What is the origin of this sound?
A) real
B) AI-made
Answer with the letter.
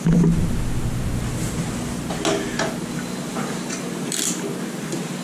A